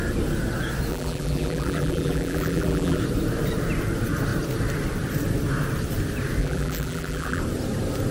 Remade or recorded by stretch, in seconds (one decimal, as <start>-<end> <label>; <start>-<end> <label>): 0.0-0.9 recorded; 0.9-3.0 remade; 3.0-6.4 recorded; 6.4-7.4 remade; 7.4-8.1 recorded